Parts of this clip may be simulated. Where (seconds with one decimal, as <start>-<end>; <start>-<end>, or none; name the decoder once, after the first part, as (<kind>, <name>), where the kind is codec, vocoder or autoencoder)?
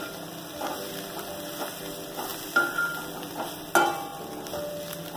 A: none